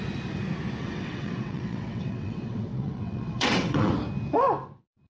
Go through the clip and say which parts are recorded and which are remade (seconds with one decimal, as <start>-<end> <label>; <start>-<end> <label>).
0.0-0.8 recorded; 0.8-3.9 remade; 3.9-5.1 recorded

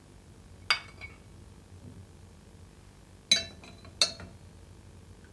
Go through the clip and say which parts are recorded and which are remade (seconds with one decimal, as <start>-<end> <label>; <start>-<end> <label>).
0.0-5.3 recorded